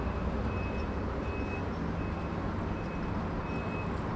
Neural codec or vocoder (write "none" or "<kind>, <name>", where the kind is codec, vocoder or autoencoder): none